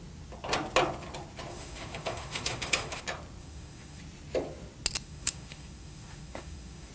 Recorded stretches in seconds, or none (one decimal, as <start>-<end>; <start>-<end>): 0.0-1.5; 3.0-3.4; 4.0-5.0